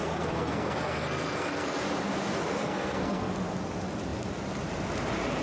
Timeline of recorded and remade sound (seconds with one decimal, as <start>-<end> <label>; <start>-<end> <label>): 0.0-1.8 remade; 1.8-2.6 recorded; 2.6-3.3 remade; 3.3-5.4 recorded